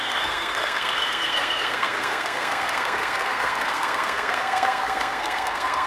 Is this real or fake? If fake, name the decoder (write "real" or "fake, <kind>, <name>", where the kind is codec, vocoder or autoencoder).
fake, codec, SNAC